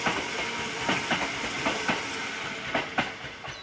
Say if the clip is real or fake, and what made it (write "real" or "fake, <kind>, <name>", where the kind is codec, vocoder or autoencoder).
real